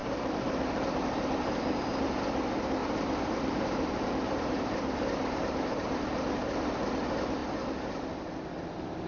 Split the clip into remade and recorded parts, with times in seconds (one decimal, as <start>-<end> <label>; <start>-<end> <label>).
0.0-2.2 remade; 2.2-2.8 recorded; 2.8-6.6 remade; 6.6-9.1 recorded